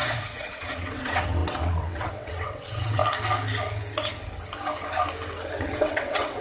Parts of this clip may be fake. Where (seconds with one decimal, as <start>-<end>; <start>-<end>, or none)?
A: 0.0-3.0; 5.6-6.4